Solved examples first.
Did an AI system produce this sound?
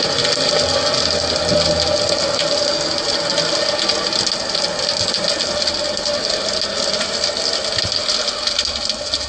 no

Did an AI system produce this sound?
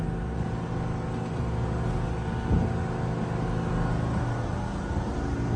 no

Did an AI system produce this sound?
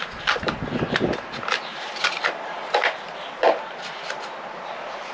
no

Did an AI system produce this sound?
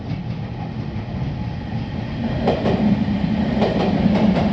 no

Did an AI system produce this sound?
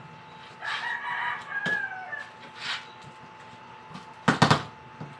no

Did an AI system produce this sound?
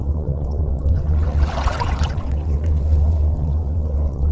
yes